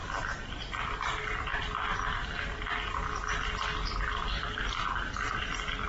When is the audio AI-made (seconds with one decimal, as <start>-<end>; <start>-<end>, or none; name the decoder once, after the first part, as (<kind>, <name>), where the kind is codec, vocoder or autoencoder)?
1.5-3.3 (vocoder, BigVGAN v2)